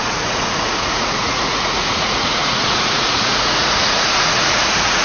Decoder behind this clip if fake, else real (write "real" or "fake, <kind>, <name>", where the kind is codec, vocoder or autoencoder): fake, vocoder, Vocos